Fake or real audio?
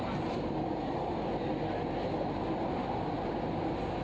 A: real